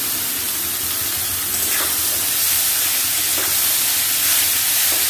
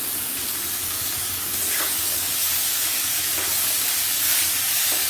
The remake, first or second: second